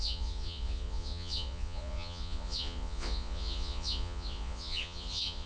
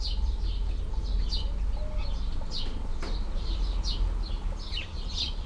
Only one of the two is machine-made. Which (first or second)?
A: first